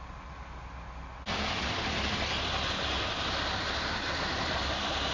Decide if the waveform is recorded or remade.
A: recorded